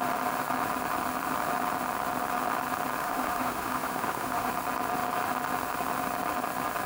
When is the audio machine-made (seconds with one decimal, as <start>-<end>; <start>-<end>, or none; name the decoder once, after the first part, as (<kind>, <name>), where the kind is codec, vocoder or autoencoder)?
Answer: 3.0-4.5 (autoencoder, DAC-VAE)